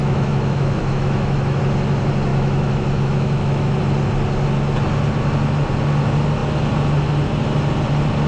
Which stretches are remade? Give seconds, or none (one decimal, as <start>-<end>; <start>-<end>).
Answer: 0.0-1.6; 2.3-3.8

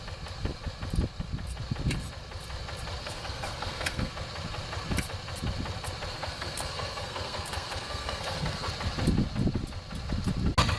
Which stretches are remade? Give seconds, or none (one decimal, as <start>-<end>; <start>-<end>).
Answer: 3.0-4.1; 6.1-8.7